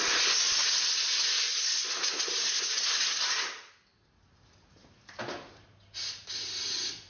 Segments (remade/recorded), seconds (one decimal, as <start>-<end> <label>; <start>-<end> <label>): 0.0-7.1 recorded